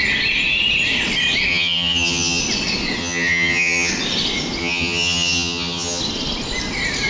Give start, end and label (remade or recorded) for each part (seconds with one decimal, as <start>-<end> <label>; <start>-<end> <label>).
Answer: 0.0-1.5 recorded; 1.5-2.4 remade; 2.4-3.0 recorded; 3.0-3.9 remade; 3.9-4.6 recorded; 4.6-6.0 remade; 6.0-7.1 recorded